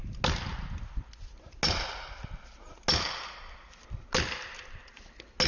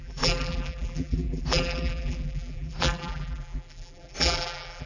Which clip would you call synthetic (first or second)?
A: second